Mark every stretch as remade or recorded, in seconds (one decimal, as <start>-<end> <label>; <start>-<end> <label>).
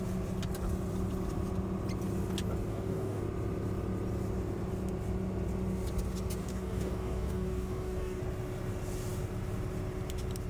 0.0-2.7 recorded; 2.7-3.2 remade; 3.2-6.4 recorded; 6.4-8.2 remade; 8.2-10.5 recorded